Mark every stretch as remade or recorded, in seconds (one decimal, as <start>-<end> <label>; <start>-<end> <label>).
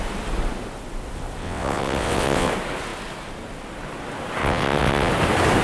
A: 0.0-1.4 recorded; 1.4-2.5 remade; 2.5-4.4 recorded; 4.4-5.1 remade; 5.1-5.6 recorded